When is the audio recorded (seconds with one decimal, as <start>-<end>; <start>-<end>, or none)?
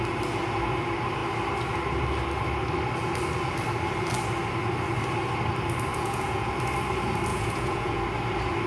0.0-5.9; 6.5-7.3; 8.0-8.7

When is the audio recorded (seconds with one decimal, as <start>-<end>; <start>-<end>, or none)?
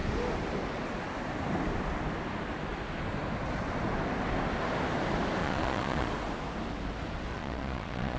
0.0-5.4; 6.1-7.3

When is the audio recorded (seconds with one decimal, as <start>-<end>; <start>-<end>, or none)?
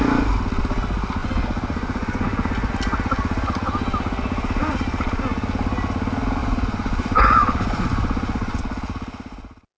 0.0-1.2; 2.7-6.4; 8.6-9.8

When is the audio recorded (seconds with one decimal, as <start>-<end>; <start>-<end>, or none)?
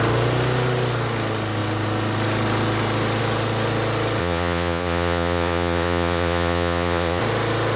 0.0-4.2; 7.2-7.8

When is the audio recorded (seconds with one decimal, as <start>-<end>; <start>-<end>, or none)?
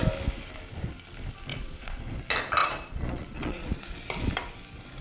0.0-1.5; 2.0-2.6; 3.8-5.0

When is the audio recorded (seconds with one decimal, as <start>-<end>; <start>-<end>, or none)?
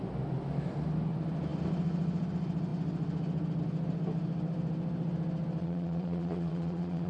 0.0-5.6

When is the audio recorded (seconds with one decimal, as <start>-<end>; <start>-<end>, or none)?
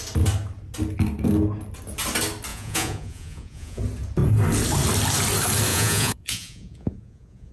0.0-2.5; 3.8-5.7